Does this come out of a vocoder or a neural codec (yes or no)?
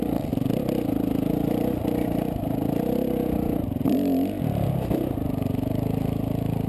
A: no